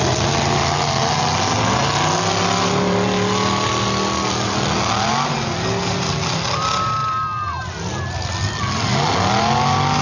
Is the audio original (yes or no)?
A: yes